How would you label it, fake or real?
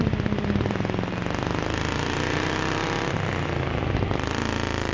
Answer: fake